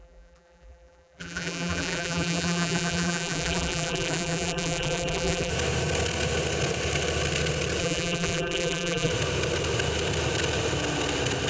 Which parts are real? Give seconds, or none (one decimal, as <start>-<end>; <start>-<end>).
5.5-7.8; 9.1-11.5